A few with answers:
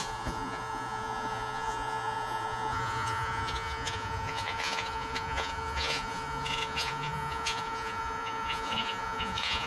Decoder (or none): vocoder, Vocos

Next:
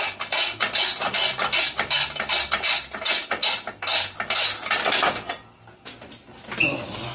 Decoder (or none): none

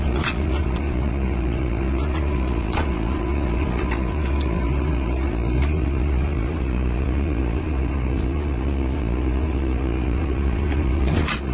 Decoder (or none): vocoder, Vocos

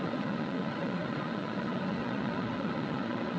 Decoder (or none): vocoder, Vocos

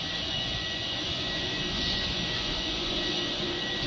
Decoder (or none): vocoder, Vocos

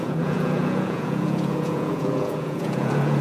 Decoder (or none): vocoder, Vocos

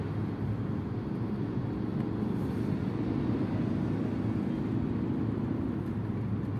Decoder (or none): none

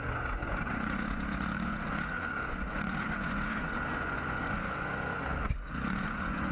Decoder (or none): vocoder, Vocos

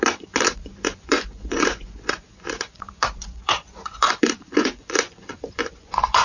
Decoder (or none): vocoder, Vocos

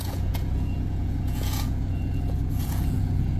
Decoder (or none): vocoder, Vocos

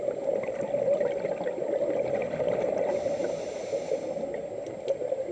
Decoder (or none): none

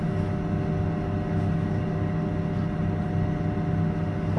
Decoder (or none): none